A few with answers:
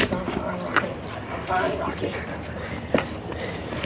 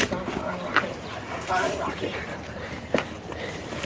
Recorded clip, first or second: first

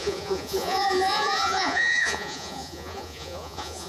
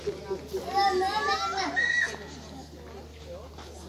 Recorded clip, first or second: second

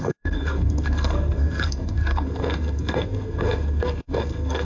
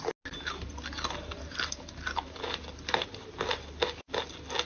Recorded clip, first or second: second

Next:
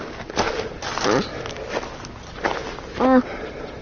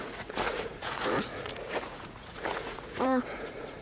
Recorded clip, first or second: first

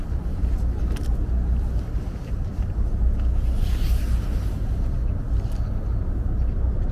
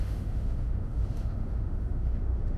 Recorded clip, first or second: first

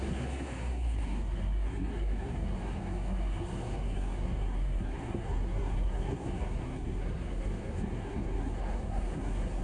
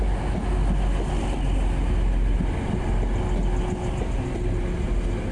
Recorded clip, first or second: second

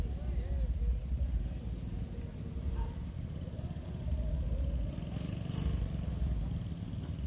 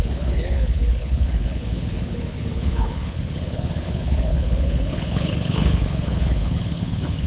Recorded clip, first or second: first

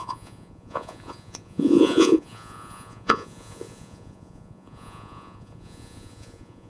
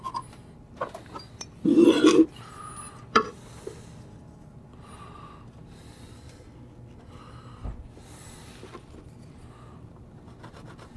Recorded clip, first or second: second